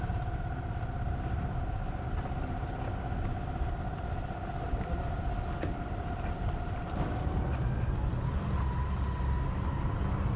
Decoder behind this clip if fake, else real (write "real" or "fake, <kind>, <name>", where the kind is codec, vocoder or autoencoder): real